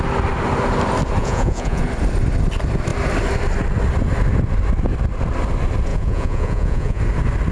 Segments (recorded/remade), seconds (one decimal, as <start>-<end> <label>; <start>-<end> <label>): 0.0-1.2 recorded; 1.2-1.8 remade; 1.8-5.9 recorded; 5.9-7.0 remade; 7.0-7.5 recorded